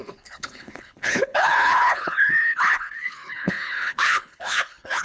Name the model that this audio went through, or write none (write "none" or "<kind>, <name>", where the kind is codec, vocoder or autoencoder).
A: codec, HILCodec